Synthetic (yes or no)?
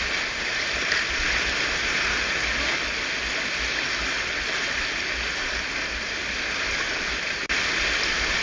no